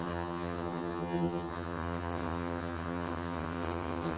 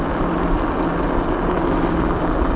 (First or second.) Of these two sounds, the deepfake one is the first